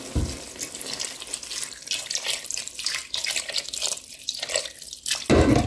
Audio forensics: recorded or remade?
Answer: recorded